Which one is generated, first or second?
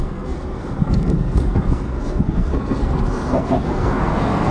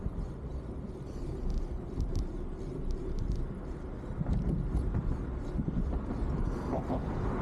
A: first